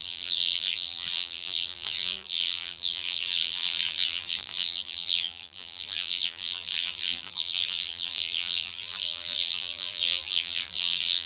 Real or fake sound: fake